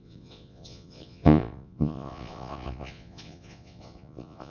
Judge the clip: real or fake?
fake